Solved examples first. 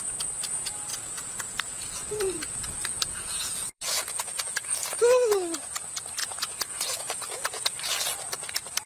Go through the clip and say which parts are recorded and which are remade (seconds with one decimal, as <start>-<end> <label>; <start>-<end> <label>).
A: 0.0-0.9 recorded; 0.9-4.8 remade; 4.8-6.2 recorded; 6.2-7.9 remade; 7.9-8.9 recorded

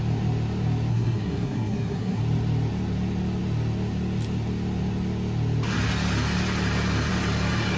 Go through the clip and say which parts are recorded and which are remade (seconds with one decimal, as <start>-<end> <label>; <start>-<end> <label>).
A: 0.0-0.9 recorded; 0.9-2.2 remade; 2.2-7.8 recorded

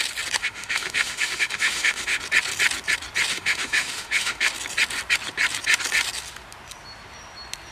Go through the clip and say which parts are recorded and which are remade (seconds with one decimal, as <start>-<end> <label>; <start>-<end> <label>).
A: 0.0-0.4 recorded; 0.4-2.2 remade; 2.2-3.3 recorded; 3.3-4.5 remade; 4.5-7.7 recorded

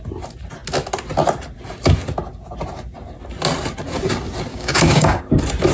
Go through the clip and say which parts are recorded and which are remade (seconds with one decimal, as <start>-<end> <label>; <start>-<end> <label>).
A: 0.0-4.5 recorded; 4.5-5.2 remade; 5.2-5.7 recorded

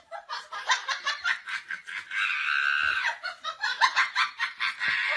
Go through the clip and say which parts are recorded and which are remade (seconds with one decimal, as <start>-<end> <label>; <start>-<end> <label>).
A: 0.0-2.9 recorded; 2.9-3.9 remade; 3.9-5.2 recorded

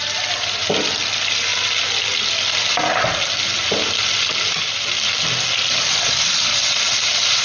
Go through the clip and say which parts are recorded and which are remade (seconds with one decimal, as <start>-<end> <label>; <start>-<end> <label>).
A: 0.0-7.4 recorded

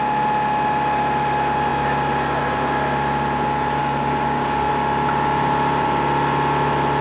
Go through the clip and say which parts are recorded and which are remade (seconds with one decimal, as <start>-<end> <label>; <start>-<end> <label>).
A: 0.0-3.8 recorded; 3.8-4.7 remade; 4.7-7.0 recorded

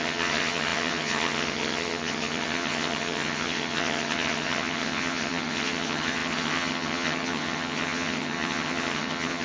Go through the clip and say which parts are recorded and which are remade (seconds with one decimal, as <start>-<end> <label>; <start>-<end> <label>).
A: 0.0-9.4 remade